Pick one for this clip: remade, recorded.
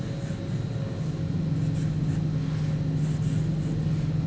recorded